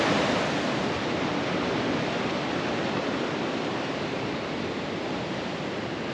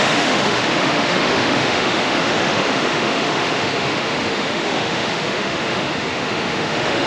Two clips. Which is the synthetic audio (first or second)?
second